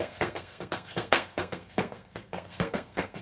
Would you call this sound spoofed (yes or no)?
yes